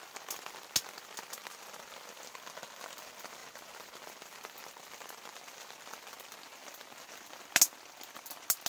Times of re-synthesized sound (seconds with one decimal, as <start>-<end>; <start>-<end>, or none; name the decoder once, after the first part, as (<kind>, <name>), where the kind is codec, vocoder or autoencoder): none